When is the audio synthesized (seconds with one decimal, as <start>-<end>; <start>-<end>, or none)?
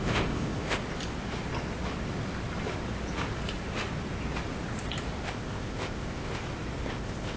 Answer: 0.0-0.8; 5.2-6.4; 6.9-7.4